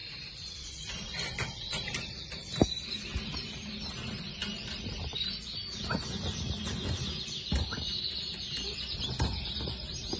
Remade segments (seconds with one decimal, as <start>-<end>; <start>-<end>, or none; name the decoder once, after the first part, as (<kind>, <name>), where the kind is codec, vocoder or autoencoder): 0.0-2.3 (vocoder, BigVGAN v2)